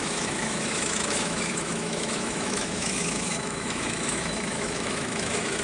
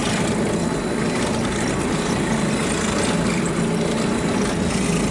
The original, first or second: second